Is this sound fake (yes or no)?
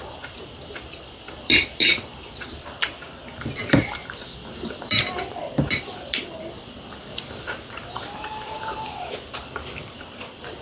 yes